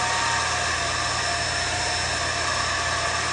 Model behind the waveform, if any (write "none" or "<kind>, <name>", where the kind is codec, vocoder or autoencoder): none